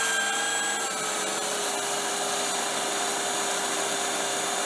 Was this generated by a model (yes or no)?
no